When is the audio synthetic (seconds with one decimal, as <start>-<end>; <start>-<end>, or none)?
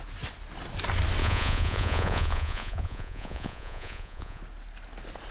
1.2-4.4